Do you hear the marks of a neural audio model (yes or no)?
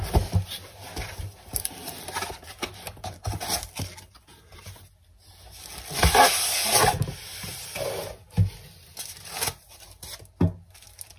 no